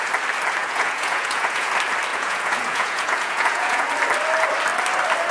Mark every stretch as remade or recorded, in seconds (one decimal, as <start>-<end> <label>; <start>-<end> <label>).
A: 0.0-0.6 recorded; 0.6-1.7 remade; 1.7-2.1 recorded; 2.1-3.9 remade; 3.9-5.3 recorded